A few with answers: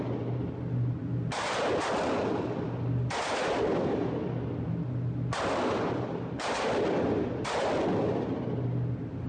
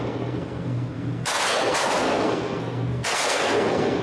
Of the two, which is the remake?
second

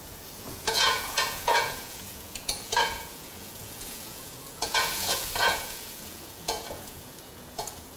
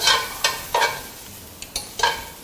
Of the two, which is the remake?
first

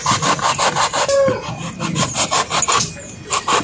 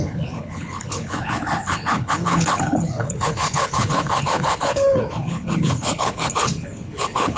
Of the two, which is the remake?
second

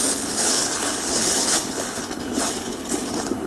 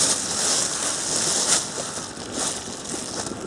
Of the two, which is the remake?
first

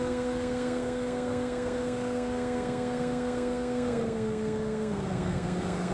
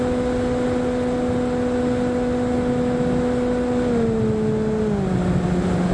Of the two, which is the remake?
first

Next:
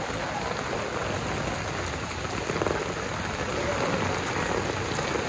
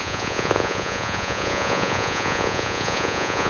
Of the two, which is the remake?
second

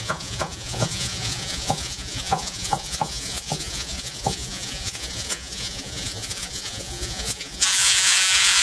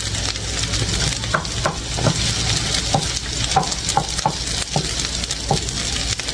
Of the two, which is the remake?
first